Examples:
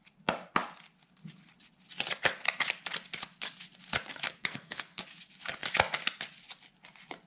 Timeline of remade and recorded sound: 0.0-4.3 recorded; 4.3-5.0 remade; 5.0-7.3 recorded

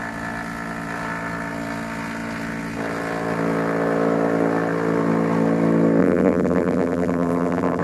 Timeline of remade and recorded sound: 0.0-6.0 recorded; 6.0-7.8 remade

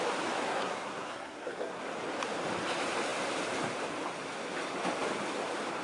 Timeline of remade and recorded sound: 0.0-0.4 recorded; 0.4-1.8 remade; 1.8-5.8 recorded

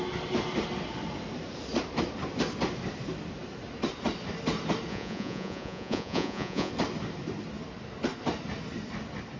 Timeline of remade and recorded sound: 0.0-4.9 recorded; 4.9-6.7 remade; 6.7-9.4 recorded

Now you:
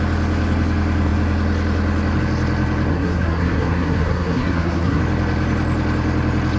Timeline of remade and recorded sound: 0.0-2.9 recorded; 2.9-5.0 remade; 5.0-6.6 recorded

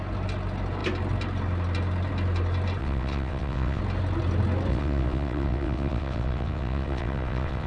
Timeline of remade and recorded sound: 0.0-2.8 recorded; 2.8-3.8 remade; 3.8-4.7 recorded; 4.7-7.7 remade